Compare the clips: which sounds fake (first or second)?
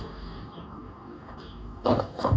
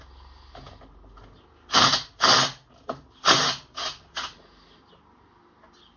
first